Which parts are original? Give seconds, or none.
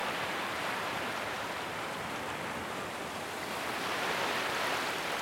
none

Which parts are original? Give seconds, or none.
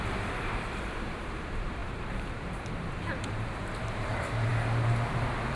4.5-5.6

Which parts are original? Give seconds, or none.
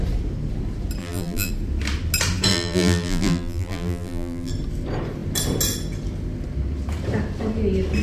0.0-1.0; 1.5-2.5; 4.5-8.0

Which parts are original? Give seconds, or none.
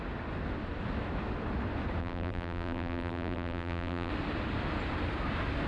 0.0-2.0; 4.1-5.7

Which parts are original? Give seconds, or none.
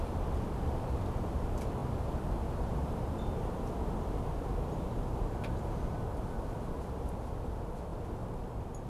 1.8-3.5; 7.9-8.4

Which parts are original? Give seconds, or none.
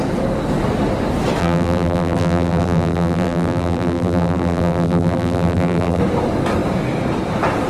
0.0-1.4; 6.0-7.7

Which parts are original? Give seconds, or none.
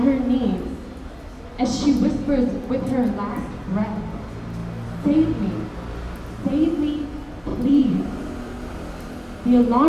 0.0-7.5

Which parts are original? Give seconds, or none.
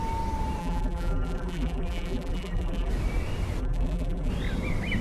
0.0-0.6; 2.9-3.6; 4.3-5.0